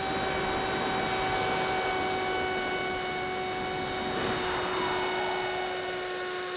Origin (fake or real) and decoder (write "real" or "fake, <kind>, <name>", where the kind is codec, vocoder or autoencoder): real